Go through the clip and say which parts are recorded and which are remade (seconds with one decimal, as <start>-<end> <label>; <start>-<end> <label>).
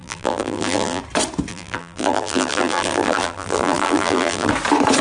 0.0-1.0 remade; 1.0-1.5 recorded; 1.5-4.5 remade; 4.5-5.0 recorded